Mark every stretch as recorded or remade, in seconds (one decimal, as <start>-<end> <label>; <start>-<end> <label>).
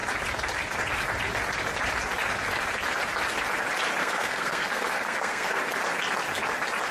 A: 0.0-4.0 recorded; 4.0-5.6 remade; 5.6-6.9 recorded